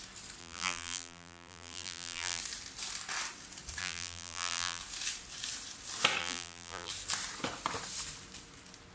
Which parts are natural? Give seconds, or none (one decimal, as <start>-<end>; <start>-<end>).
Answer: 0.0-0.4; 2.4-3.8; 4.8-6.2; 6.9-8.9